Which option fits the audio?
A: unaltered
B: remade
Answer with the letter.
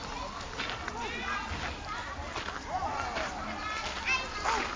A